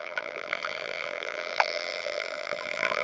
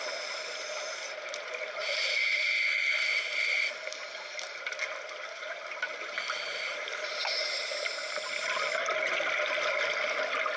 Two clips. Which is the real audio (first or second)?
second